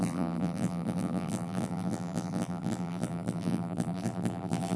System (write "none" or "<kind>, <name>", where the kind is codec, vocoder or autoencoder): vocoder, BigVGAN v2